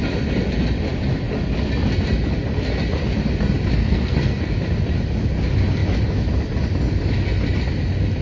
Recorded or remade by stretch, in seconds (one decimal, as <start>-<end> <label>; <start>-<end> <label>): 0.0-3.8 recorded; 3.8-4.5 remade; 4.5-8.2 recorded